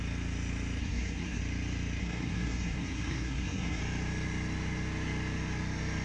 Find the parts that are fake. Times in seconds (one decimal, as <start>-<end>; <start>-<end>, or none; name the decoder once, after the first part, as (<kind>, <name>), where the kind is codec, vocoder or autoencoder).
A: 0.8-1.4 (codec, SNAC); 2.0-3.8